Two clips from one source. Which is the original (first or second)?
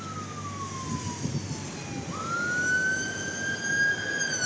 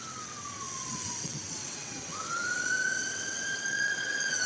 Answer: first